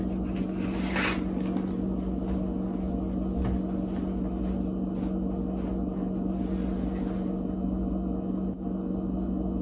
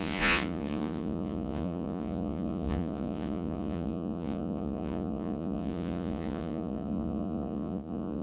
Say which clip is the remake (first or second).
second